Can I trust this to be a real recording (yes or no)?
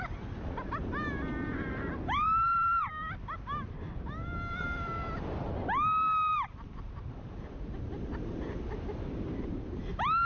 no